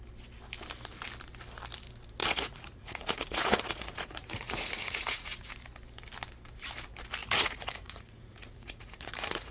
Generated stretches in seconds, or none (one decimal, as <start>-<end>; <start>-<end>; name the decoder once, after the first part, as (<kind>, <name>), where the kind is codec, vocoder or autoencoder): 2.2-5.5 (vocoder, Vocos); 7.2-9.5